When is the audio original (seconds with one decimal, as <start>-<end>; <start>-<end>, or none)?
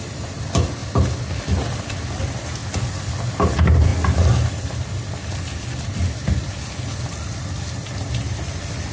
0.8-1.4; 2.6-3.5; 3.9-8.1